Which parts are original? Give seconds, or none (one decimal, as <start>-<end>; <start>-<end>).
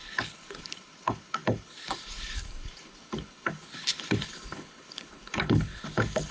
none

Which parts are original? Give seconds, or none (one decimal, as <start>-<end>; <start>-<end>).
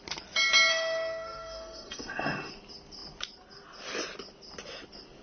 0.0-0.7; 2.5-5.2